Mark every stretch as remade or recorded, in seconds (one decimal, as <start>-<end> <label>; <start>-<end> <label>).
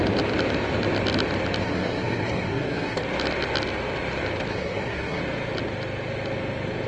0.0-1.6 recorded; 1.6-3.0 remade; 3.0-4.5 recorded; 4.5-5.2 remade; 5.2-6.9 recorded